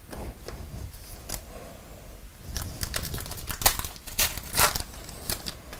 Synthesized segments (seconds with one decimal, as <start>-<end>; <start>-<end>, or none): none